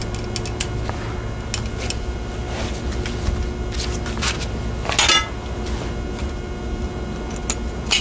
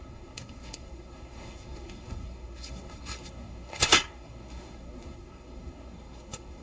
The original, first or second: first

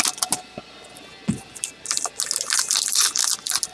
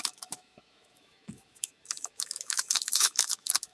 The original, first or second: first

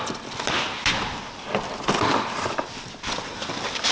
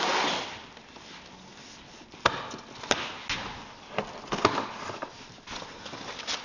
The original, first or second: second